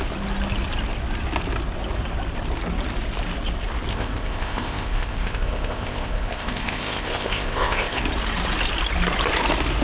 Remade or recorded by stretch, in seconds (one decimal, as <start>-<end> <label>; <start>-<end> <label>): 0.0-3.9 recorded; 3.9-8.0 remade; 8.0-9.8 recorded